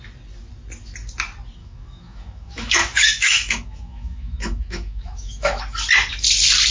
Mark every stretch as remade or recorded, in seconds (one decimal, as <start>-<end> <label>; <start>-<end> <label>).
0.0-1.6 recorded; 1.6-5.6 remade; 5.6-6.7 recorded